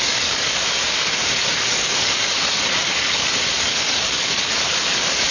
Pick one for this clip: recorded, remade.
remade